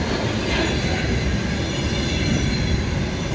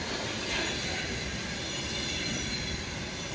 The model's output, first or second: second